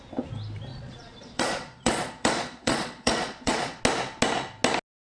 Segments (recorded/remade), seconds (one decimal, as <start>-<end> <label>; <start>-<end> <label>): 0.0-0.7 recorded; 0.7-3.8 remade; 3.8-5.1 recorded